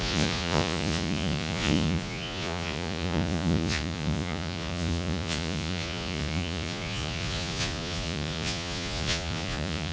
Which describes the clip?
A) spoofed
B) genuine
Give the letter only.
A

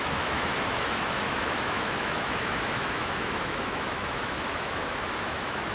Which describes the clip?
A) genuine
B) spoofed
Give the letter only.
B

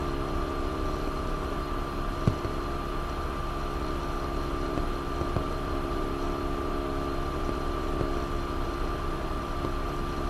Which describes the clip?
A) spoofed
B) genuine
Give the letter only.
B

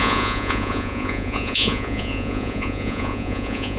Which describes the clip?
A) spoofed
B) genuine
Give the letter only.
A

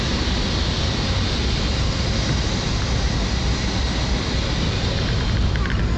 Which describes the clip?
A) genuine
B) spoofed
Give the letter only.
A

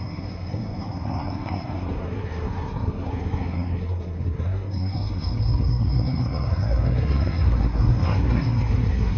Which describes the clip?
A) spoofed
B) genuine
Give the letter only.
A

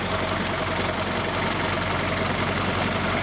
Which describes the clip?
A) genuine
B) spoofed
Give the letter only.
A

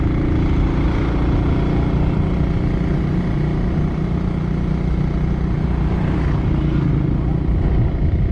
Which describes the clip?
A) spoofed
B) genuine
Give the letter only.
B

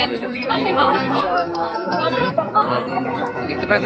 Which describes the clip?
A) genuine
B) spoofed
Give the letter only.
B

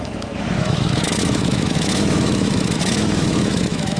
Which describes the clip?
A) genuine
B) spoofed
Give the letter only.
B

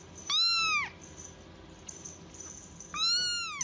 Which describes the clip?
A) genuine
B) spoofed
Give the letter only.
A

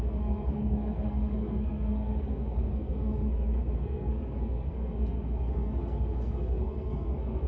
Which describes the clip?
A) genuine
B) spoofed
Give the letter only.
B